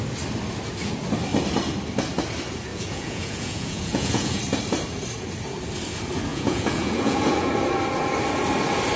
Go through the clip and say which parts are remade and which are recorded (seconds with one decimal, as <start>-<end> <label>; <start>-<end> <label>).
0.0-2.7 recorded; 2.7-4.4 remade; 4.4-6.3 recorded; 6.3-7.5 remade; 7.5-9.0 recorded